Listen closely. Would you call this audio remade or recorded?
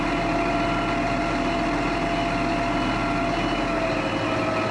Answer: recorded